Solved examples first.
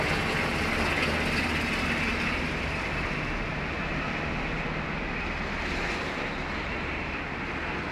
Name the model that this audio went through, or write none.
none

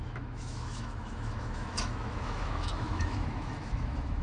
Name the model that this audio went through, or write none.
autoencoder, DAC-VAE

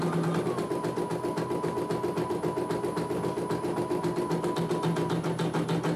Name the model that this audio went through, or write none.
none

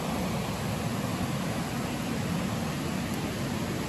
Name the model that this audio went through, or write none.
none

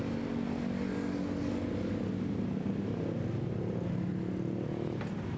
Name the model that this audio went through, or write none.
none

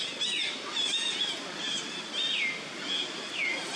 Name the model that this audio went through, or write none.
none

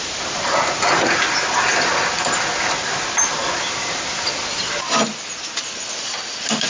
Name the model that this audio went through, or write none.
none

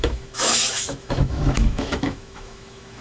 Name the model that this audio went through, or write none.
autoencoder, DAC-VAE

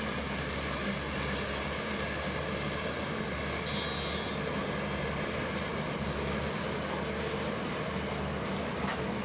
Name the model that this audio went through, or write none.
none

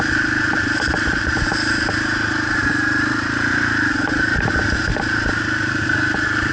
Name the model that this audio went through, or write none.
none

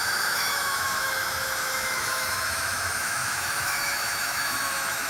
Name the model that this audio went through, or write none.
autoencoder, DAC-VAE